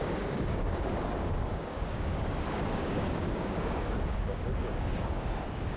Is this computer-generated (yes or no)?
yes